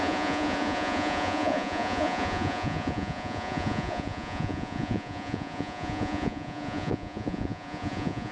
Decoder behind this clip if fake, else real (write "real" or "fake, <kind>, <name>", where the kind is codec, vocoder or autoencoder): fake, vocoder, Vocos